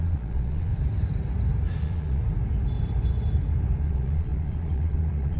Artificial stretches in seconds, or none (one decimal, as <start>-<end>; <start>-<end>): 0.0-0.7; 1.8-2.2; 3.8-5.4